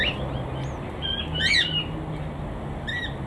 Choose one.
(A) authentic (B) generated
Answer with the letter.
A